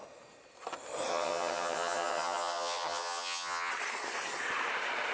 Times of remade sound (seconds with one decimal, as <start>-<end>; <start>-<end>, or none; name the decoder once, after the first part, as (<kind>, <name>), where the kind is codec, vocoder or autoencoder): 1.1-3.7 (vocoder, HiFi-GAN)